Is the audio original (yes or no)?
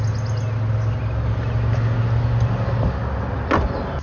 yes